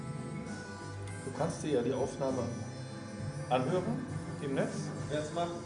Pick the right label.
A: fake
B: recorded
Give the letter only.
B